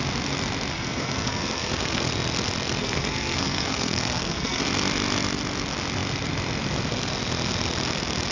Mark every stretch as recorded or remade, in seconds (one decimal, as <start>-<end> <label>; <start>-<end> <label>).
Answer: 0.0-0.7 recorded; 0.7-2.1 remade; 2.1-2.8 recorded; 2.8-4.6 remade; 4.6-8.3 recorded

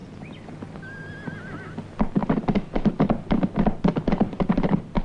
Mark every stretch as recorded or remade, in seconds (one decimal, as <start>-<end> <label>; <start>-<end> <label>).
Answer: 0.0-5.0 recorded

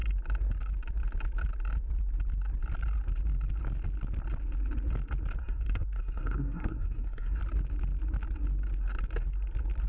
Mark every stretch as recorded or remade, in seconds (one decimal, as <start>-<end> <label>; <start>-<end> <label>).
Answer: 0.0-5.4 recorded; 5.4-7.4 remade; 7.4-9.9 recorded

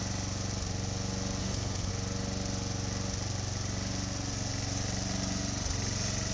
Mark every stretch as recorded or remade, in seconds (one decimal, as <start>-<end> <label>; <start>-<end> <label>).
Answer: 0.0-1.4 recorded; 1.4-1.9 remade; 1.9-6.3 recorded